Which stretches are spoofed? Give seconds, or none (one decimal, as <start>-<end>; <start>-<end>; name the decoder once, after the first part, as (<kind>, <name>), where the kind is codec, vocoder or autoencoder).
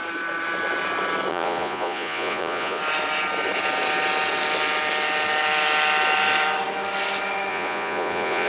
1.3-2.8 (vocoder, Vocos); 7.5-8.5